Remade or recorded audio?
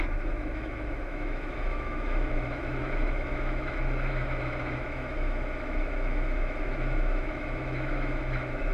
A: remade